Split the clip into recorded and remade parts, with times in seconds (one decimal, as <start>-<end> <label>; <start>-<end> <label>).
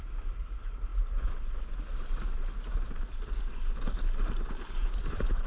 0.0-0.9 remade; 0.9-4.2 recorded; 4.2-5.5 remade